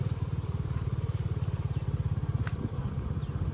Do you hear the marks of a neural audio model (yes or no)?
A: no